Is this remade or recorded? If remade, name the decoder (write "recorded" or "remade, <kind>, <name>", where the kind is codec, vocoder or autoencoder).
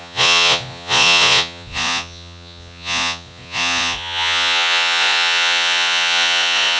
remade, vocoder, Vocos